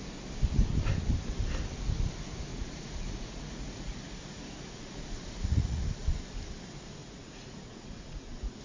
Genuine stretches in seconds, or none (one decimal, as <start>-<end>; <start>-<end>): 0.0-2.5; 5.8-7.0